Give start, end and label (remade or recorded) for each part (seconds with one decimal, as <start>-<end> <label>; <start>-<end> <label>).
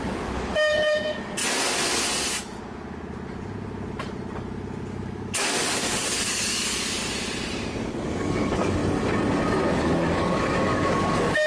0.0-1.4 remade; 1.4-4.9 recorded; 4.9-7.0 remade; 7.0-7.8 recorded; 7.8-8.8 remade; 8.8-9.7 recorded; 9.7-11.5 remade